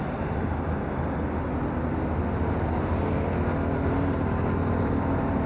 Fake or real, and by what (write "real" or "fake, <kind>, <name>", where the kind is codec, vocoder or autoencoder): real